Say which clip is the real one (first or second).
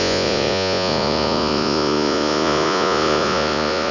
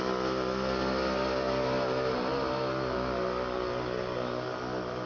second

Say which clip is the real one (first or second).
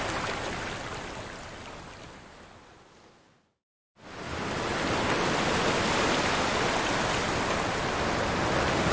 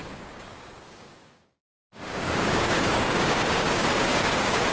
first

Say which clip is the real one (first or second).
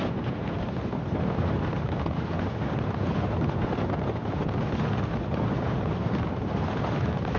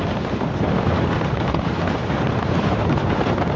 first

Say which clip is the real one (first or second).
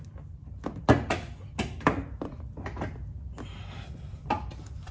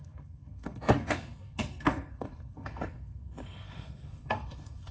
first